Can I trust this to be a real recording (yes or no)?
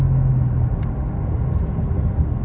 yes